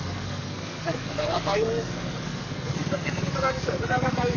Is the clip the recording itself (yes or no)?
no